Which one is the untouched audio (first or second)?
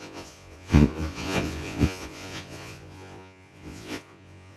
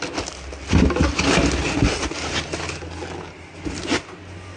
second